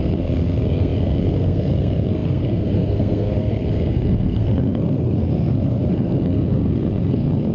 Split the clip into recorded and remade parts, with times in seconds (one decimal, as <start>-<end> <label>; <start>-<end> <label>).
0.0-7.5 remade